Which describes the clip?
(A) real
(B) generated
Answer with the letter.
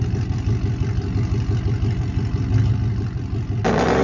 A